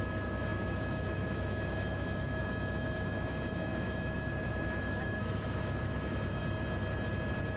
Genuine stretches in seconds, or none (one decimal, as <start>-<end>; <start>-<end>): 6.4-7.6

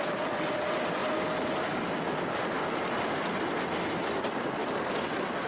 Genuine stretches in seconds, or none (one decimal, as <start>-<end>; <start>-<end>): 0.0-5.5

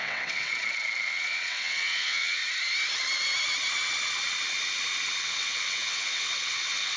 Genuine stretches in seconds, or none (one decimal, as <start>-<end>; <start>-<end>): 0.5-1.1; 2.4-5.2

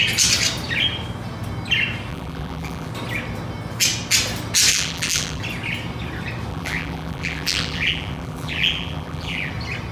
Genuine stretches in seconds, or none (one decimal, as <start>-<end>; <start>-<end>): 0.0-2.1; 2.9-4.7; 5.4-6.5; 9.5-9.9